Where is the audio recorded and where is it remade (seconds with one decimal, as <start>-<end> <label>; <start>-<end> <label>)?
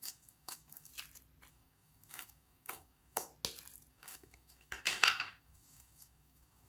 0.0-0.9 remade; 0.9-1.5 recorded; 1.5-3.3 remade; 3.3-3.9 recorded; 3.9-6.7 remade